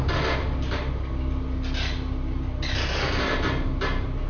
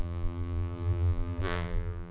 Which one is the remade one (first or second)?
second